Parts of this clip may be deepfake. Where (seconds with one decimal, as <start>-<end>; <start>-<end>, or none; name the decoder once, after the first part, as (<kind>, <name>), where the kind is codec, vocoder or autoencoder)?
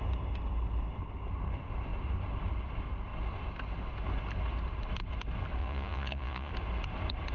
5.6-6.5 (vocoder, Vocos)